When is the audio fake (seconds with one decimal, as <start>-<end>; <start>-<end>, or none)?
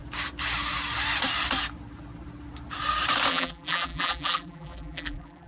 3.3-5.5